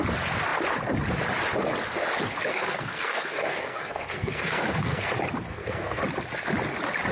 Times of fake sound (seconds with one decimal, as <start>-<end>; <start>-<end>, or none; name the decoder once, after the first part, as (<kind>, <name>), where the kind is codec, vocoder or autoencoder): 2.5-5.1 (codec, SNAC); 5.5-6.0